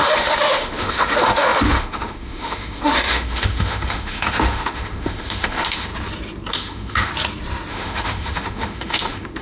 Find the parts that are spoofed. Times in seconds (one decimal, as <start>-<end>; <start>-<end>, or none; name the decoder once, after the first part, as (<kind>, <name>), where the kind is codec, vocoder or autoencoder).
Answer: 0.0-5.9 (autoencoder, DAC-VAE); 6.5-7.1; 7.7-9.4